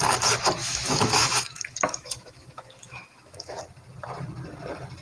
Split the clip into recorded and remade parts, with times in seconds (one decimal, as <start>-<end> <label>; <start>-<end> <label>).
0.0-0.6 recorded; 0.6-3.6 remade; 3.6-5.0 recorded